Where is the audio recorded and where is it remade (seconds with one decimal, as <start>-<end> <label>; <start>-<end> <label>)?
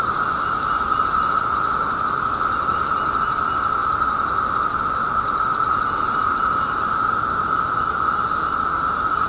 0.0-9.3 recorded